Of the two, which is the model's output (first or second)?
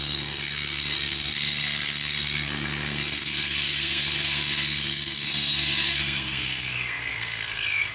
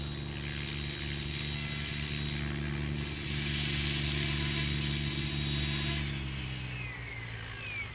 first